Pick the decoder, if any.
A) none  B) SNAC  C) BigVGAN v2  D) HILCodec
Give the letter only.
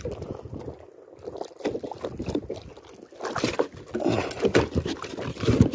A